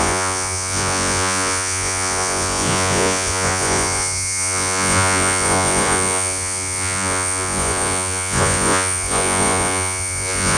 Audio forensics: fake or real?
fake